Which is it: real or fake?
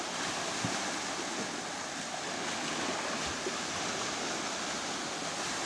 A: real